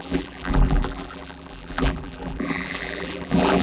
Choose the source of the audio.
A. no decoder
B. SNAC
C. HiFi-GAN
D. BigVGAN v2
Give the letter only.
D